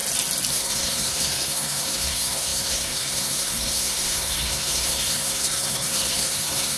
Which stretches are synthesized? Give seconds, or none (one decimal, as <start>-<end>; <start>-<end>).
0.5-6.8